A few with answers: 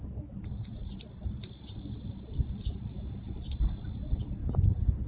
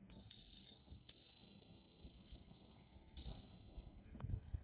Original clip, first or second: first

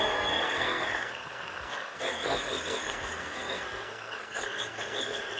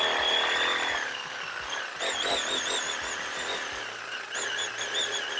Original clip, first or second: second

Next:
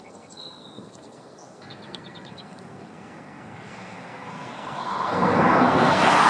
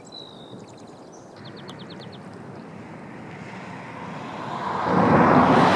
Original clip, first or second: second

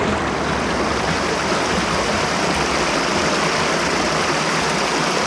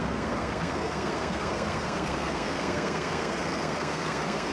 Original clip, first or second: first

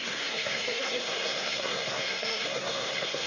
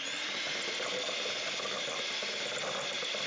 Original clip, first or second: second